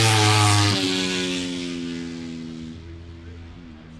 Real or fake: real